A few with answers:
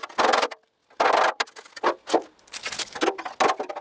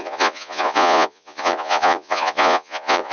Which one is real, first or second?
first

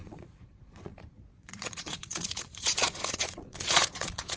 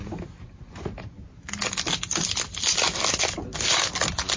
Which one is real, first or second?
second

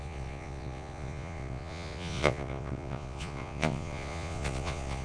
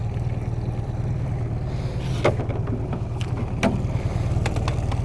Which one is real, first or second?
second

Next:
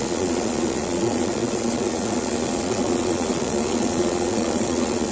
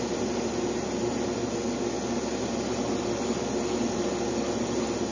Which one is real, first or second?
second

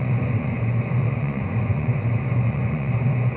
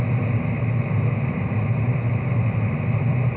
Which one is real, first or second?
second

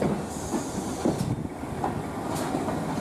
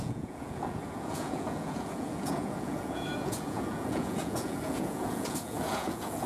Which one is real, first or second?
first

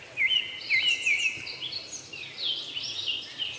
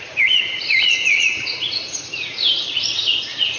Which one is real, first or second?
first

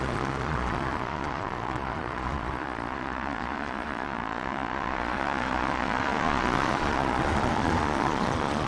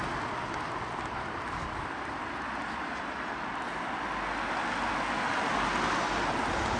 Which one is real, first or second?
second